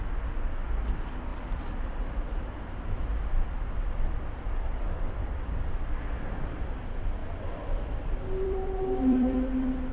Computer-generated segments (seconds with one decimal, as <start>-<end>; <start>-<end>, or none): 3.1-6.2; 7.2-9.9